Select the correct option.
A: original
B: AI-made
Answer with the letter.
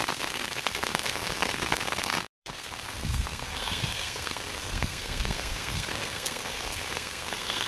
B